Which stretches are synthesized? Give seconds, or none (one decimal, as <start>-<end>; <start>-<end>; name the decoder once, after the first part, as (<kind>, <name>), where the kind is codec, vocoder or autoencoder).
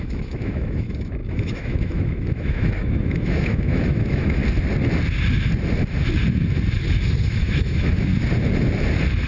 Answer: 0.0-4.4 (autoencoder, DAC-VAE); 7.2-8.1